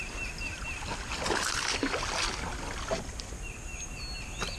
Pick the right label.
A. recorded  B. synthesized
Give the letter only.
A